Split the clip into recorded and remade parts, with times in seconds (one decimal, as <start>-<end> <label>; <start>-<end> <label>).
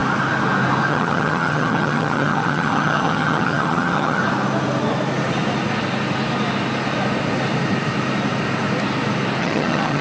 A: 0.0-0.9 recorded; 0.9-4.2 remade; 4.2-9.4 recorded; 9.4-10.0 remade